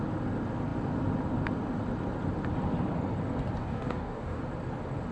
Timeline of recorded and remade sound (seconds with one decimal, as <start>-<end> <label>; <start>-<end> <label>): 0.0-3.6 recorded; 3.6-4.4 remade; 4.4-5.1 recorded